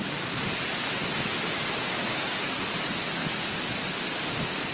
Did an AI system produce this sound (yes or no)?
no